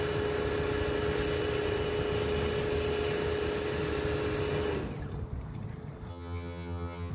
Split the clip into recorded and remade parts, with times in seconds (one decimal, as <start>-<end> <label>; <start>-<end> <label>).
0.0-6.1 recorded; 6.1-7.1 remade